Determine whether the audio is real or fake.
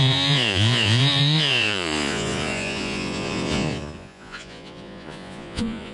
fake